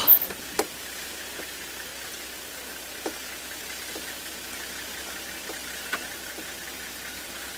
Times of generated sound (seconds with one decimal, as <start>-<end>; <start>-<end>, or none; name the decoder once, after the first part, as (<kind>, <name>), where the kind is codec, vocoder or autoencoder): none